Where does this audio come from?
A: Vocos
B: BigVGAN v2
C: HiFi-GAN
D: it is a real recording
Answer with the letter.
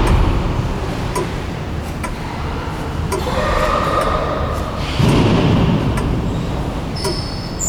B